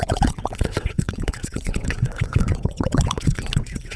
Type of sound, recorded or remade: remade